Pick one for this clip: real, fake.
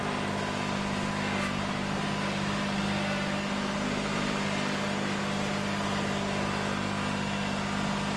real